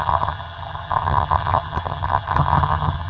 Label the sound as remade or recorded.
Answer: remade